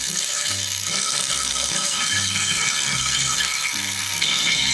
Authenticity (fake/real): fake